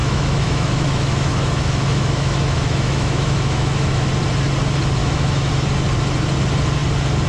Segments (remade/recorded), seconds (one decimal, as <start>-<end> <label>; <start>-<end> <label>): 0.0-4.1 remade; 4.1-5.0 recorded; 5.0-5.5 remade; 5.5-7.3 recorded